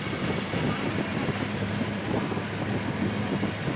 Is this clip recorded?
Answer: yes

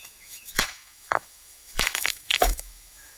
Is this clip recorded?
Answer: no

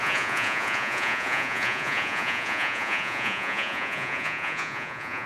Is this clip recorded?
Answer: no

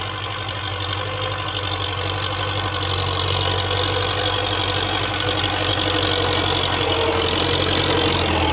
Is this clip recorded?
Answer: yes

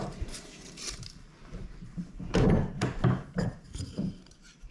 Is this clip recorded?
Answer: no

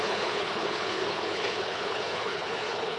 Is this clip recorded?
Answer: no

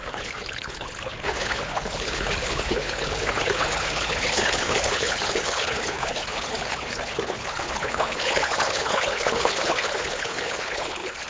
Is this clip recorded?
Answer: no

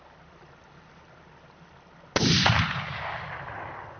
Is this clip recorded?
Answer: yes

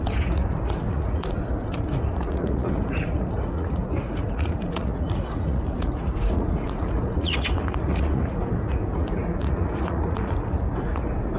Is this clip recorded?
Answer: no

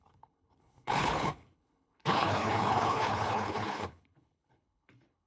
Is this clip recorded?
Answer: no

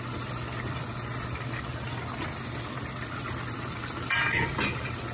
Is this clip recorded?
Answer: yes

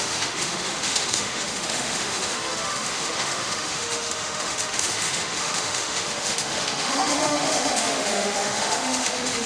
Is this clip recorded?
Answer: no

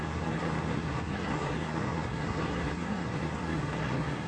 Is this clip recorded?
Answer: no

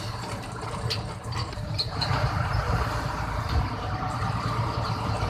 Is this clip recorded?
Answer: no